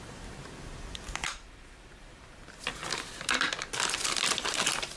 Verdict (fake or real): fake